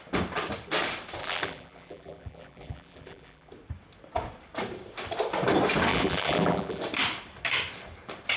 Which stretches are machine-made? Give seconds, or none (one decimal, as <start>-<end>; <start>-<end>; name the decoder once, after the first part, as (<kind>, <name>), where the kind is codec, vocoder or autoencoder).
1.2-3.5 (vocoder, BigVGAN v2); 5.9-6.8